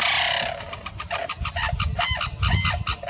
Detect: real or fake real